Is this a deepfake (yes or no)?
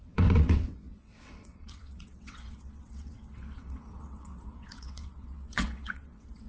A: yes